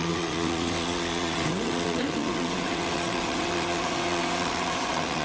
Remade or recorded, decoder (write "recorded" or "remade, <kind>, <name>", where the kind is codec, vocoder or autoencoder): remade, vocoder, WaveNeXt